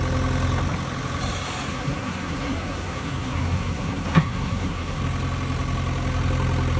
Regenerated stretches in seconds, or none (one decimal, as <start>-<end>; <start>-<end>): 1.7-5.0